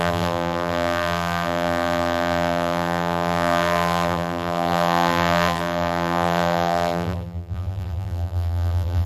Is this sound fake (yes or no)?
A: yes